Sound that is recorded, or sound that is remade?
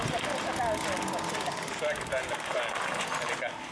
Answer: recorded